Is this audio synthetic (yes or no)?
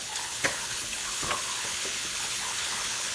yes